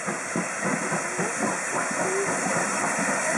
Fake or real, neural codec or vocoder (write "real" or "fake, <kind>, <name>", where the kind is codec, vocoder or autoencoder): real